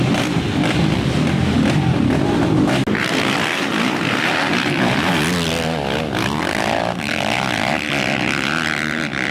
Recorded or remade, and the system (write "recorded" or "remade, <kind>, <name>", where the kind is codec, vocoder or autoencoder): recorded